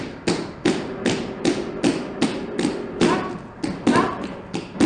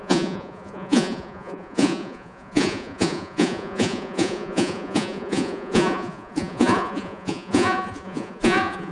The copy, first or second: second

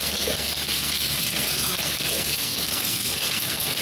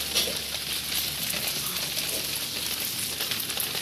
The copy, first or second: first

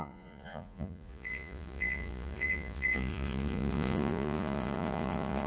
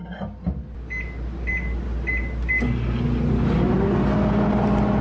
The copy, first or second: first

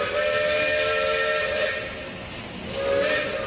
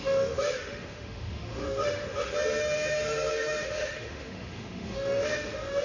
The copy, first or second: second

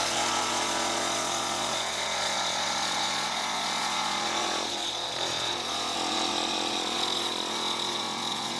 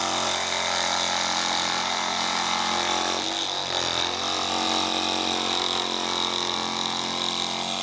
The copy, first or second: first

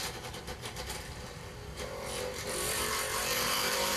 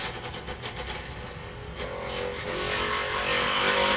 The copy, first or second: first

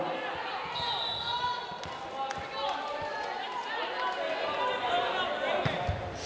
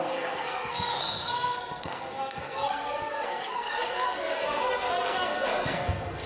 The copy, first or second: second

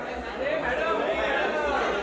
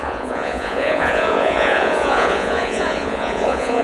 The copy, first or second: second